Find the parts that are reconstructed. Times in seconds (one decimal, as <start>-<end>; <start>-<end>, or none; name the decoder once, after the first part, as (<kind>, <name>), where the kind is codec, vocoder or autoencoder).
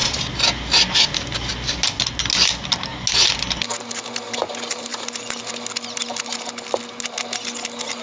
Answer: none